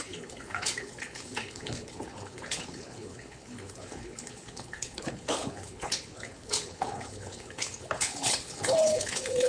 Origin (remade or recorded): remade